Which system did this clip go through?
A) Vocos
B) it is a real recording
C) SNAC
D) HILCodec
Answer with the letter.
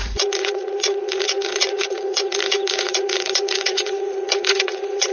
A